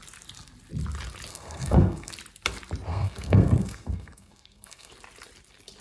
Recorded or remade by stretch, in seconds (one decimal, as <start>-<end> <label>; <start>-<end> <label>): 0.0-1.3 recorded; 1.3-2.1 remade; 2.1-2.9 recorded; 2.9-4.9 remade; 4.9-5.8 recorded